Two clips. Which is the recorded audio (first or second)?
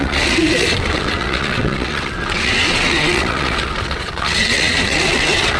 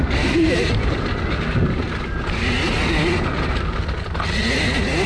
second